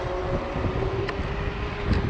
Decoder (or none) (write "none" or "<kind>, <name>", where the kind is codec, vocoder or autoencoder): none